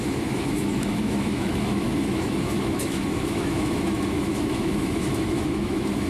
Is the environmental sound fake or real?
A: fake